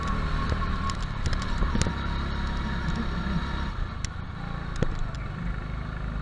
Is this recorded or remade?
recorded